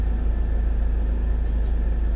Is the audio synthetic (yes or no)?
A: no